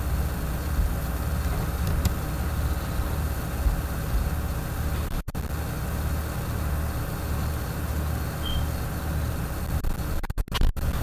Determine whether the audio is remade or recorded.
recorded